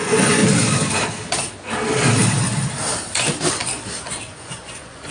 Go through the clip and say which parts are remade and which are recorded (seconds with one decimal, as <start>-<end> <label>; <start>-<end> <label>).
0.0-0.4 remade; 0.4-3.5 recorded; 3.5-5.1 remade